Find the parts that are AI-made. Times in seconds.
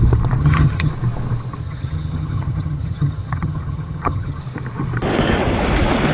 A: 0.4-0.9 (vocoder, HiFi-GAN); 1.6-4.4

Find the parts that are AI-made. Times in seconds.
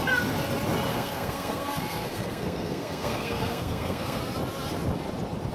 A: 0.9-4.2 (codec, SNAC)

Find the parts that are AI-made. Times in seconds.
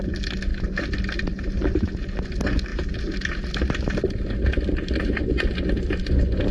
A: 0.5-1.8 (vocoder, BigVGAN v2)